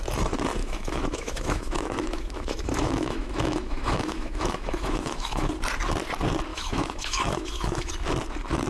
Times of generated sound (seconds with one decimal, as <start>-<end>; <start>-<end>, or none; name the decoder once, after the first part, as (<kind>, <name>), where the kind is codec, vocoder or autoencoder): 0.6-5.5 (autoencoder, DAC-VAE); 6.5-7.9